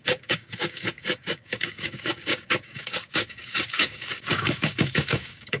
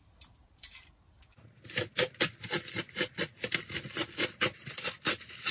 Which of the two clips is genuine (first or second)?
second